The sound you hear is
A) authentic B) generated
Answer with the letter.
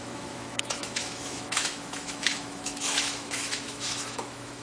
B